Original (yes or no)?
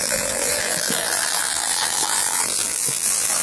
no